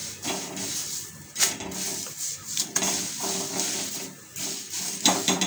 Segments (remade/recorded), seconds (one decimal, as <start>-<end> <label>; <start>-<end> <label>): 0.0-5.5 remade